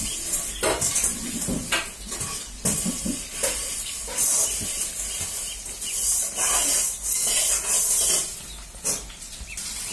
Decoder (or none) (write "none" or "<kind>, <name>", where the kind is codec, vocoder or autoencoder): none